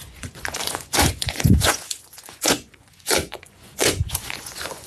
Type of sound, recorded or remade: remade